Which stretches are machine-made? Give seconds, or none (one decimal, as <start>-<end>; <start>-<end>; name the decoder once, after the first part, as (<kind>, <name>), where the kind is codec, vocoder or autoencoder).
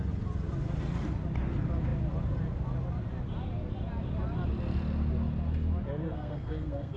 6.0-7.0 (codec, SNAC)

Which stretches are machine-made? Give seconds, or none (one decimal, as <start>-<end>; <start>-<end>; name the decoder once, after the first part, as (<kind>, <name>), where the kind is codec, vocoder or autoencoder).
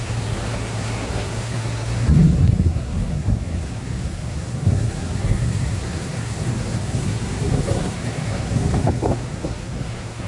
0.0-10.3 (codec, SNAC)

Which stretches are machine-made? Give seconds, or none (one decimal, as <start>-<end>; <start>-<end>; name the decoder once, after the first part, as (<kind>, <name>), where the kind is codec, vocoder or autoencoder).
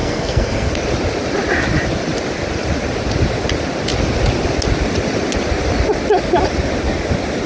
0.0-0.7 (codec, SNAC)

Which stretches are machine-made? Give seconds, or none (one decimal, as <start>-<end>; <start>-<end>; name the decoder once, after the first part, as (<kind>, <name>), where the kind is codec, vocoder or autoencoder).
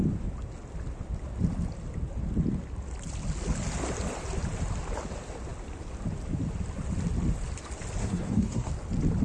8.0-8.7 (codec, SNAC)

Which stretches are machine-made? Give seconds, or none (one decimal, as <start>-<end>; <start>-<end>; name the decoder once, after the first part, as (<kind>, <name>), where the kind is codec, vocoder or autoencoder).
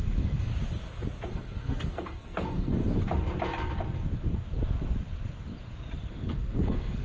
0.0-0.5 (codec, SNAC); 1.3-2.8; 6.1-7.0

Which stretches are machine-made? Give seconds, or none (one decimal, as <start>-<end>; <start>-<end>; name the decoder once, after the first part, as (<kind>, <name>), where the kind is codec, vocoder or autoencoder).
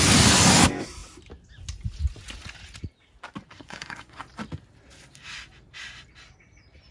3.5-4.2 (codec, SNAC)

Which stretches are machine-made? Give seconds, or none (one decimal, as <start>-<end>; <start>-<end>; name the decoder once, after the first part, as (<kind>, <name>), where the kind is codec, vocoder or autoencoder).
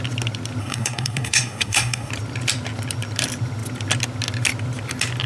0.6-2.1 (codec, SNAC)